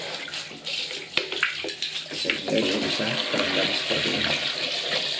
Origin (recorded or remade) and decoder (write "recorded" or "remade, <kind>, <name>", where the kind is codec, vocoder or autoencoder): recorded